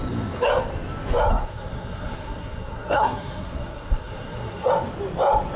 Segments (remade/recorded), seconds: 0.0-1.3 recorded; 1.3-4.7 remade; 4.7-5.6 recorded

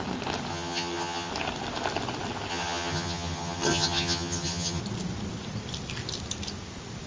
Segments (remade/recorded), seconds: 0.0-0.5 recorded; 0.5-1.3 remade; 1.3-2.5 recorded; 2.5-4.8 remade; 4.8-7.1 recorded

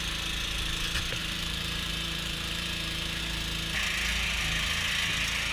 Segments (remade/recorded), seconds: 0.0-1.2 recorded; 1.2-3.2 remade; 3.2-5.5 recorded

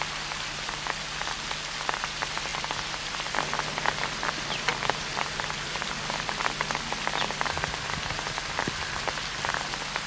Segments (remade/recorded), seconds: 0.0-10.1 recorded

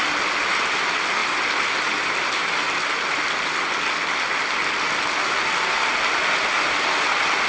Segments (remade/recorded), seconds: 0.0-7.5 recorded

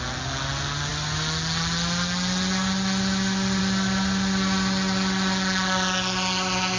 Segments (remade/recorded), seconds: 0.0-6.8 recorded